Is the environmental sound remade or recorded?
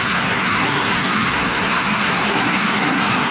remade